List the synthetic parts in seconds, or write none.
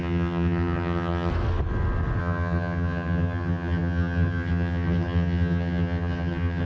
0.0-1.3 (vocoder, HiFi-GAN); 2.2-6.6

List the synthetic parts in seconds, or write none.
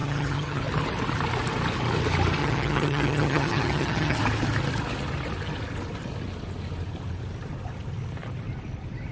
0.0-0.6 (vocoder, HiFi-GAN); 2.4-4.2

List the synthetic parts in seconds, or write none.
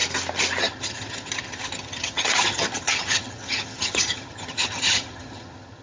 0.6-5.8 (vocoder, HiFi-GAN)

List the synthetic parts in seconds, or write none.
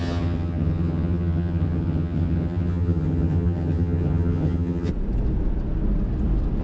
0.0-4.9 (vocoder, HiFi-GAN)